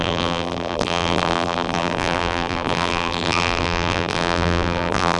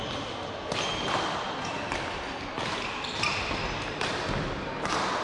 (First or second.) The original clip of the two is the second